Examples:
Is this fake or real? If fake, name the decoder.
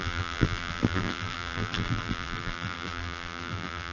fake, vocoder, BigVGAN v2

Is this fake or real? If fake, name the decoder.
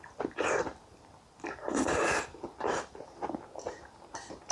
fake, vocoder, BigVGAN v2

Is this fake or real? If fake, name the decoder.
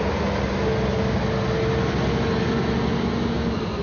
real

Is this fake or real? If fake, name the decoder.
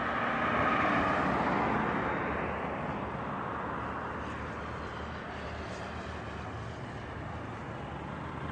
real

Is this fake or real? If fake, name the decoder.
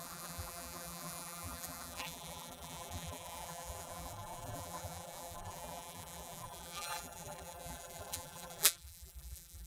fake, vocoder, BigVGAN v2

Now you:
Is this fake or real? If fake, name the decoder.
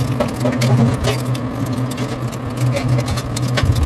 real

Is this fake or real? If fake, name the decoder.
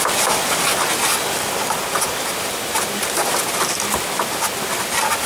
fake, vocoder, BigVGAN v2